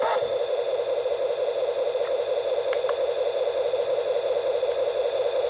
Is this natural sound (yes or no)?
yes